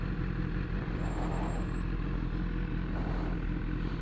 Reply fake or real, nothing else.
real